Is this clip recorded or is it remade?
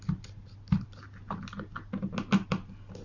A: recorded